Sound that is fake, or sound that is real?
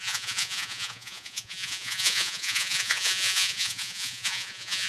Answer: fake